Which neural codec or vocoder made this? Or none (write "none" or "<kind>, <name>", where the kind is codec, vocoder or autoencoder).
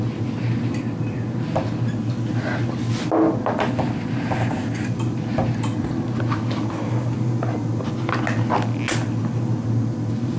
none